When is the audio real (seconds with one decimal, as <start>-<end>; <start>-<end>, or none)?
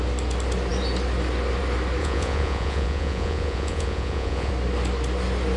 0.0-2.0; 4.5-5.6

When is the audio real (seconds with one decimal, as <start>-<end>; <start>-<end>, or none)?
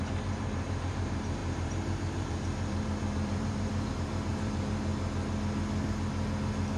4.9-6.8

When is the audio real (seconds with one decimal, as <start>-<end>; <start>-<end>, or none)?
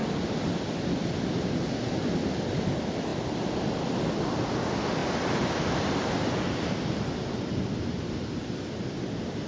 0.0-9.5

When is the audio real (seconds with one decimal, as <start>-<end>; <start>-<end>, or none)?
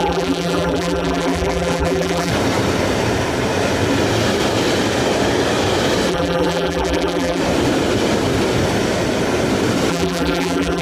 2.3-6.1; 7.4-9.9